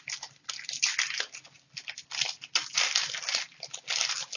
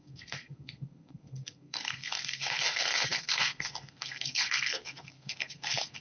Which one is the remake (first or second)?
second